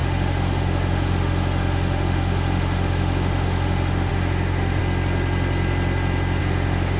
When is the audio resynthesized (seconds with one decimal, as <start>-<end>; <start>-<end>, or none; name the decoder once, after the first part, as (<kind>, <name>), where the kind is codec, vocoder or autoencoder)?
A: 0.0-4.8 (autoencoder, DAC-VAE); 6.4-7.0